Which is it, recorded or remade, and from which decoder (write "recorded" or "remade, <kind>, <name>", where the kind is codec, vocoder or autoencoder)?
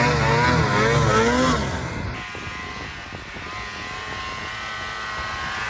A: recorded